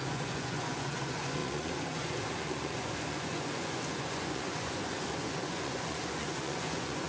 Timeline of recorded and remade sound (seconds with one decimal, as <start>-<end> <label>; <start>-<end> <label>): 0.0-7.1 remade